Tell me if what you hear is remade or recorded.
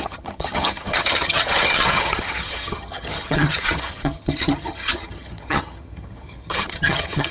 remade